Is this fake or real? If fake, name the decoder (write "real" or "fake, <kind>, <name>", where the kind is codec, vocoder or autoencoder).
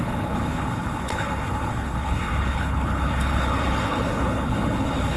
fake, codec, HILCodec